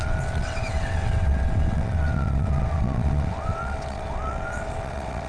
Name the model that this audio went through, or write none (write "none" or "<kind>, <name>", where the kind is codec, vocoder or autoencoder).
vocoder, WaveNeXt